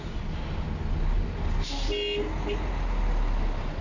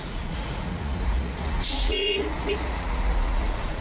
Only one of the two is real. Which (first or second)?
first